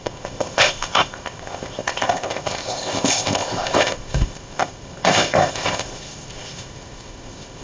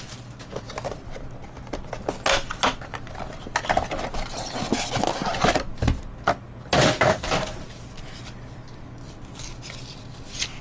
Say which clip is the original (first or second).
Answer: second